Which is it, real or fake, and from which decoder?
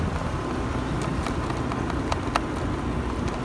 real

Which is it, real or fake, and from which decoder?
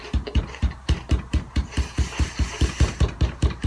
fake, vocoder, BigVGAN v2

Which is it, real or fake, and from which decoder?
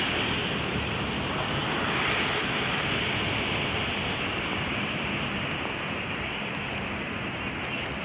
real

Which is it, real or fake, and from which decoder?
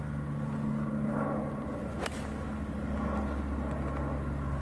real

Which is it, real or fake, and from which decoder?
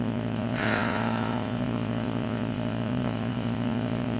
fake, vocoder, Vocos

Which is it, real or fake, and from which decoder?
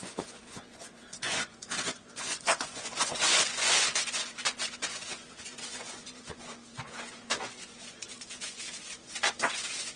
fake, vocoder, Vocos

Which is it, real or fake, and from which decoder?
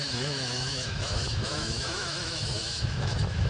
fake, autoencoder, DAC-VAE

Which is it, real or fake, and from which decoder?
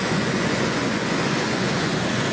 fake, vocoder, Vocos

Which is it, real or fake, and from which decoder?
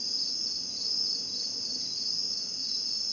real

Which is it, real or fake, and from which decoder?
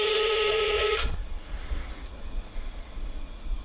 fake, vocoder, Vocos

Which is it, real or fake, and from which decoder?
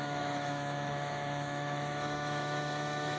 fake, autoencoder, DAC-VAE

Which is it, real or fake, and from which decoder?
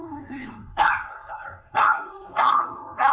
fake, codec, SNAC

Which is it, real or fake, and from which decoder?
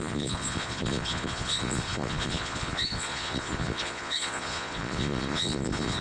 fake, vocoder, Vocos